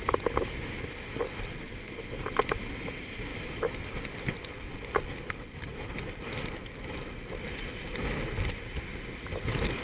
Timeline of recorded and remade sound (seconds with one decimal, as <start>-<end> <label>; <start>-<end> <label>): 0.0-9.8 recorded